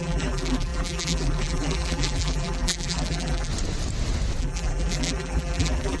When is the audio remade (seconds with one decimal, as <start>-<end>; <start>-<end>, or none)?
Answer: 0.0-3.5; 4.4-6.0